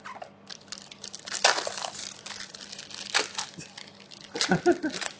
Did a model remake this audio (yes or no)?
no